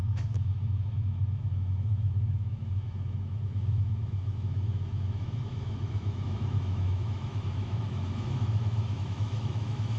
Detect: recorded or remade remade